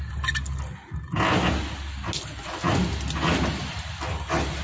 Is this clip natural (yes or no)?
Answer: yes